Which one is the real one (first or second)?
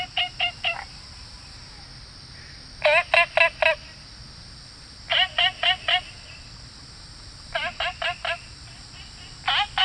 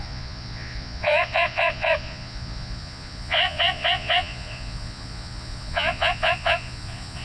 first